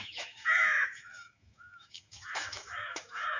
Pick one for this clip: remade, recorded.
remade